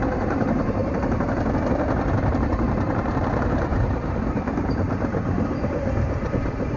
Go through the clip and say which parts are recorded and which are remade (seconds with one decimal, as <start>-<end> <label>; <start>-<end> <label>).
0.0-0.8 remade; 0.8-2.4 recorded; 2.4-6.8 remade